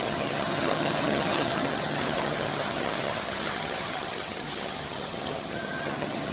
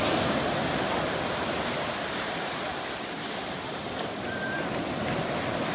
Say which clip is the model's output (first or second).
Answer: first